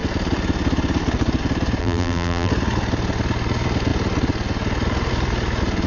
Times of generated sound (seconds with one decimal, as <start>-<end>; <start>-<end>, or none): 1.8-2.5